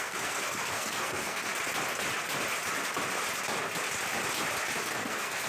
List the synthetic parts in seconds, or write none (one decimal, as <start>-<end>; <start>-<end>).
0.0-1.5; 4.8-5.5